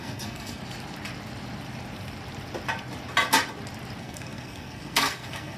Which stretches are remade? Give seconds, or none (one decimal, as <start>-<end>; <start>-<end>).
0.0-0.6; 4.0-5.6